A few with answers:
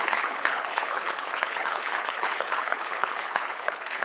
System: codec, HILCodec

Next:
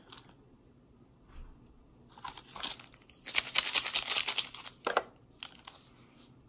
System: none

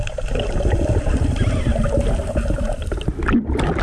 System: none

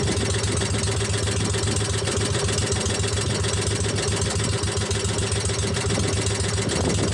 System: none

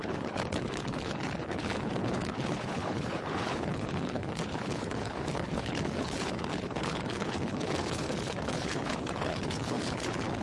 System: codec, HILCodec